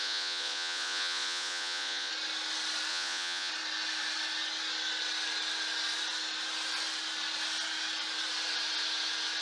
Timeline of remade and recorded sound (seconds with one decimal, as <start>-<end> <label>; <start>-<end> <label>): 0.0-2.1 remade; 2.1-2.9 recorded; 2.9-3.5 remade; 3.5-9.4 recorded